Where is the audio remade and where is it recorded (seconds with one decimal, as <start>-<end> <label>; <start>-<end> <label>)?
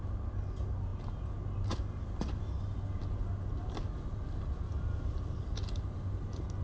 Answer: 0.0-6.6 recorded